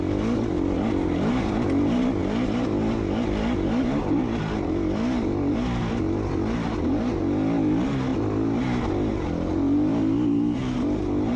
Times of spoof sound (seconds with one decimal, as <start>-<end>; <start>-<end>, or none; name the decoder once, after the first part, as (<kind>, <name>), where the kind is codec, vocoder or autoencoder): none